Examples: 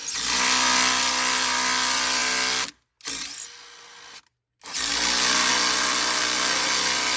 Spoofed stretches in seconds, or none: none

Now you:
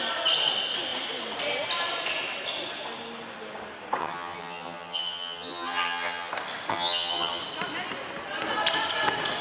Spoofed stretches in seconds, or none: 4.0-6.3 (vocoder, HiFi-GAN); 6.7-7.4

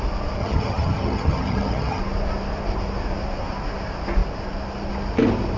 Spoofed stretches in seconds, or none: 0.4-2.0 (vocoder, HiFi-GAN)

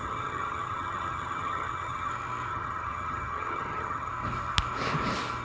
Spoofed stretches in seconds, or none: 0.0-2.1 (vocoder, HiFi-GAN); 2.5-4.1

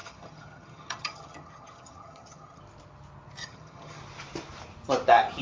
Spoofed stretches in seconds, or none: 0.0-2.6 (vocoder, HiFi-GAN); 3.4-4.0

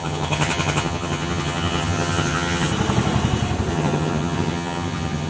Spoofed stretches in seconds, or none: 0.0-2.7 (vocoder, HiFi-GAN); 3.7-5.3